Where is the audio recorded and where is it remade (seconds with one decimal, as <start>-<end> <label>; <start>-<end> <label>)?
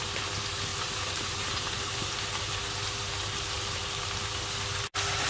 0.0-0.7 recorded; 0.7-2.1 remade; 2.1-5.3 recorded